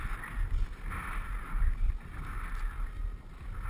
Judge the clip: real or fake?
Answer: real